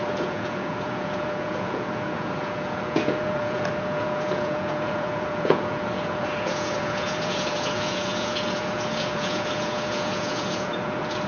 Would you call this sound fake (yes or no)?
yes